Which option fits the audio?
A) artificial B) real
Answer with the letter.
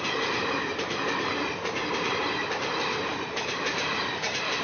A